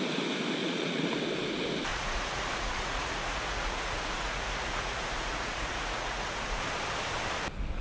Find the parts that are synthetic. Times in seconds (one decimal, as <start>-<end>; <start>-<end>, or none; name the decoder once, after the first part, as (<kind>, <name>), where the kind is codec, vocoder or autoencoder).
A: 0.6-1.2 (vocoder, Vocos); 1.9-6.6